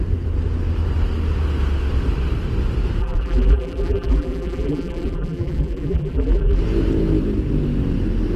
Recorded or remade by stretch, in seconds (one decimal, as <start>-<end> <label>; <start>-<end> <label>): 0.0-3.0 recorded; 3.0-6.6 remade; 6.6-8.4 recorded